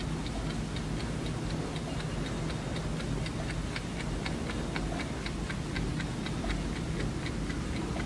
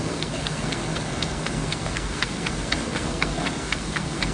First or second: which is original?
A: first